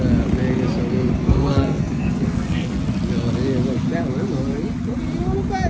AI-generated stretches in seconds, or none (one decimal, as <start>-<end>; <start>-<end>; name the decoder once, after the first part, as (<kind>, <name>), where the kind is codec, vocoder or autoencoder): 1.2-2.8 (codec, SNAC)